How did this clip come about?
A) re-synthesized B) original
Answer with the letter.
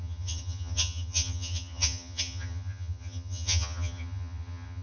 A